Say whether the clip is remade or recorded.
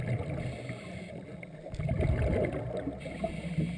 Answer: recorded